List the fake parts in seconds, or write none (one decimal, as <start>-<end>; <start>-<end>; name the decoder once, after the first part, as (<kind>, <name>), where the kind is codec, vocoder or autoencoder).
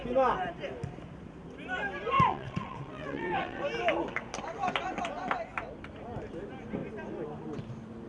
2.3-3.6 (vocoder, WaveNeXt)